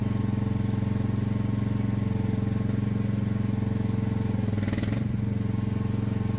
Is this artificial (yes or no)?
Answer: no